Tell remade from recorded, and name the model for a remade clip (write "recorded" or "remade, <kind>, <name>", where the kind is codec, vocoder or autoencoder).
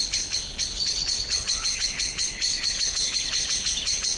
remade, codec, HILCodec